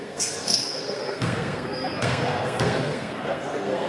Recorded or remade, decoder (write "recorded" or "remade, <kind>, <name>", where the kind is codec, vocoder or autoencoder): remade, codec, SNAC